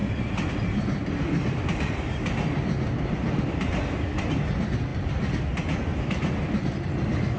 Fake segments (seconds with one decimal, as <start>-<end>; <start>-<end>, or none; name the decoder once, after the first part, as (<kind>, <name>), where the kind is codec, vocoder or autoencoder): 0.0-0.5 (vocoder, BigVGAN v2)